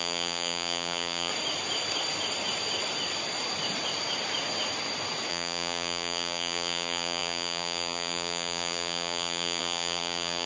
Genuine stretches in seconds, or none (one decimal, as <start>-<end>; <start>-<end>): 1.3-5.3